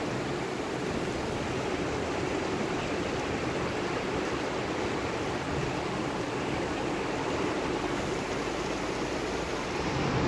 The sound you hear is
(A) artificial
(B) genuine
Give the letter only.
B